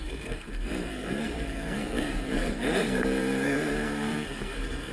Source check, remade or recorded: remade